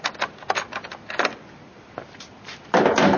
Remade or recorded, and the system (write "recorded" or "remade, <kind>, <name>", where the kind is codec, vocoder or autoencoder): recorded